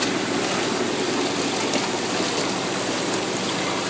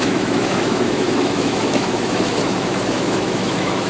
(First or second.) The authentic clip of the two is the first